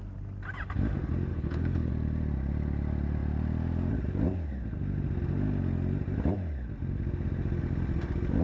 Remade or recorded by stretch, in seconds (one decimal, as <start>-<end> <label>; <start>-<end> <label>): 0.0-1.3 recorded; 1.3-1.9 remade; 1.9-8.4 recorded